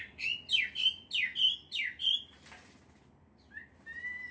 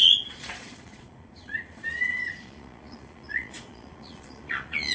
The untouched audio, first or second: first